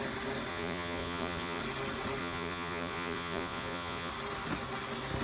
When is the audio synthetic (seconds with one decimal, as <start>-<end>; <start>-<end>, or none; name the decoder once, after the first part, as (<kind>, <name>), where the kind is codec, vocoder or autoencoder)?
0.5-1.6 (vocoder, Vocos); 2.2-4.1

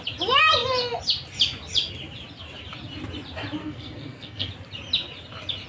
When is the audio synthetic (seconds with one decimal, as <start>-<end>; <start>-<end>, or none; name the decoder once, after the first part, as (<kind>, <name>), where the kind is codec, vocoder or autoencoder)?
3.6-4.5 (codec, SNAC)

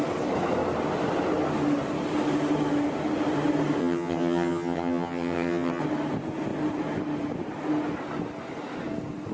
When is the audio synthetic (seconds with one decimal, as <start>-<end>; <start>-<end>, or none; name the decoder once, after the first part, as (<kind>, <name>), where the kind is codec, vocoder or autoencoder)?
3.8-5.8 (vocoder, HiFi-GAN)

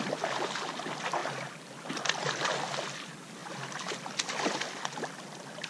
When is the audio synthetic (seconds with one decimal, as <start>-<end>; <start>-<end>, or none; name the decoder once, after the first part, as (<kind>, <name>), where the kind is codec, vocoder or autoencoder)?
none

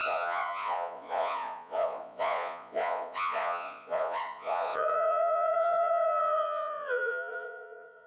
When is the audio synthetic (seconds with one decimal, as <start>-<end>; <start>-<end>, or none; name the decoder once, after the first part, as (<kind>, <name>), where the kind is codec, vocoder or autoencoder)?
0.0-8.1 (vocoder, Vocos)